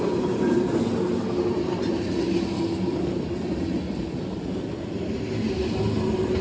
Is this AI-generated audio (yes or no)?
no